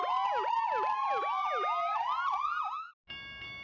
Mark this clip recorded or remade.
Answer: recorded